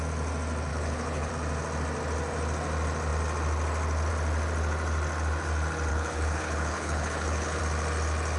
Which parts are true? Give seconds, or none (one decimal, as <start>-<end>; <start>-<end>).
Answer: 0.0-0.7; 1.3-5.9; 7.6-8.4